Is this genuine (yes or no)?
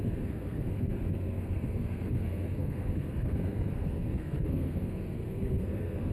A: no